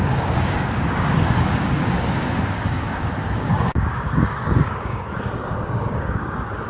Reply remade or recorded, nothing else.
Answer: remade